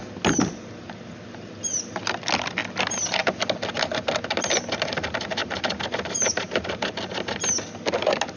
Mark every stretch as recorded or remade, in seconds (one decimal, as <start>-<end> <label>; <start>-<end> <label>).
0.0-5.4 recorded; 5.4-7.1 remade; 7.1-8.4 recorded